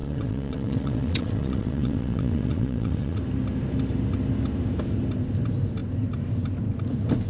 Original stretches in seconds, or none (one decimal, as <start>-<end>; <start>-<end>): 3.2-7.3